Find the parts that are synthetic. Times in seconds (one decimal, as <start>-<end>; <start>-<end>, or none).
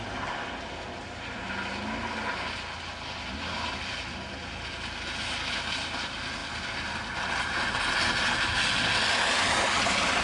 none